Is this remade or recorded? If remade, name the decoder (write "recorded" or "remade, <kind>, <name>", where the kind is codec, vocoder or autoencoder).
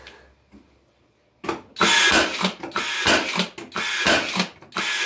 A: recorded